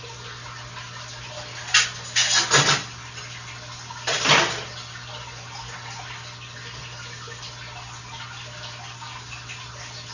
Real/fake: real